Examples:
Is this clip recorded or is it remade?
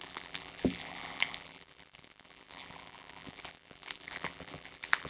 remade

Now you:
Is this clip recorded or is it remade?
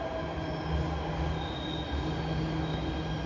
recorded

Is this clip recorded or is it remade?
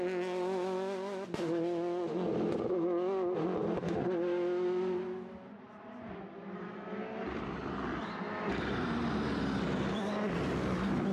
recorded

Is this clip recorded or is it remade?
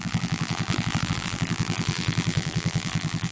remade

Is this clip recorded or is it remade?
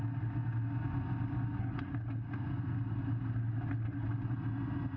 recorded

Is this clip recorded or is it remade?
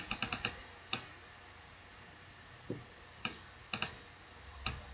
remade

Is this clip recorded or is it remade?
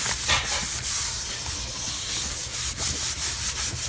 recorded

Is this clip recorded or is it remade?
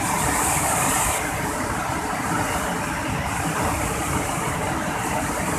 recorded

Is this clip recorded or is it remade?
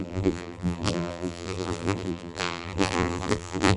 remade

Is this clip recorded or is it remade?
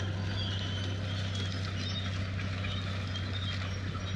recorded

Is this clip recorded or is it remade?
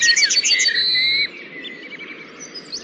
recorded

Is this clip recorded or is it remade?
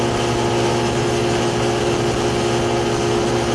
recorded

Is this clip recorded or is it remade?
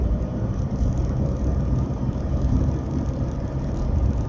remade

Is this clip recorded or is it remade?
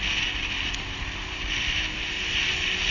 recorded